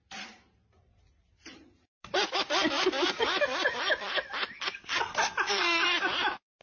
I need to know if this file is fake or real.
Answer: fake